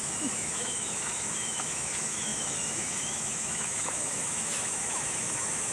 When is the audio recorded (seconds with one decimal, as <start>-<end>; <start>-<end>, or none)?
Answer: none